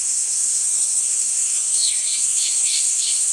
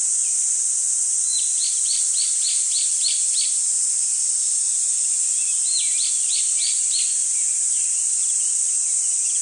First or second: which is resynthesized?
first